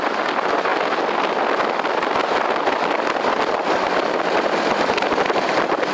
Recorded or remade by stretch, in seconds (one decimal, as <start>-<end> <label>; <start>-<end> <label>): 0.0-5.9 recorded